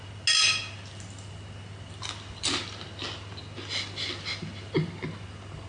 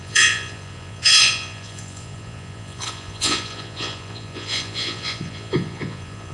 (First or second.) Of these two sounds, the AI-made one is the second